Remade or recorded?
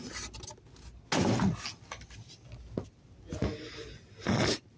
recorded